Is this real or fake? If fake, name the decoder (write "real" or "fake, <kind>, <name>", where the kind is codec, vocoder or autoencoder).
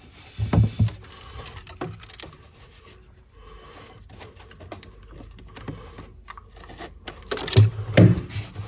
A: real